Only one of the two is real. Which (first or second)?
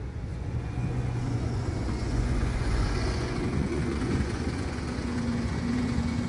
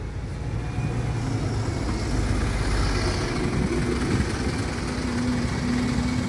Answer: second